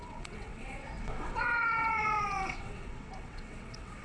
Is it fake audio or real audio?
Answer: fake